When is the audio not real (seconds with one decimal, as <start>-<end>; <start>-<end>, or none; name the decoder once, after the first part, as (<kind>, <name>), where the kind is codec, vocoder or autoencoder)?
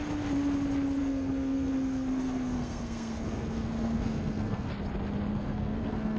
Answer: 1.0-4.7 (codec, SNAC); 5.3-6.2